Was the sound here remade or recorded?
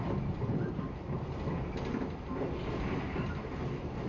recorded